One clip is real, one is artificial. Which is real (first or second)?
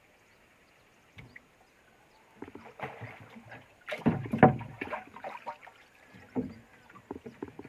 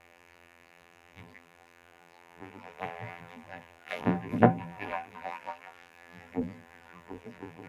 first